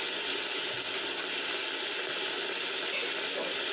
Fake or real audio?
real